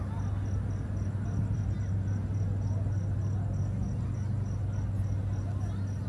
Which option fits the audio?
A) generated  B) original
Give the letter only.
B